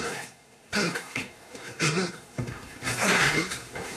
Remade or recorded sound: remade